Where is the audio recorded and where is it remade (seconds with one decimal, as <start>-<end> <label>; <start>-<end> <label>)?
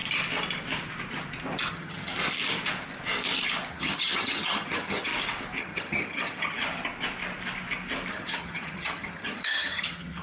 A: 0.0-1.7 recorded; 1.7-2.1 remade; 2.1-3.7 recorded; 3.7-5.1 remade; 5.1-5.6 recorded; 5.6-6.6 remade; 6.6-8.1 recorded; 8.1-10.2 remade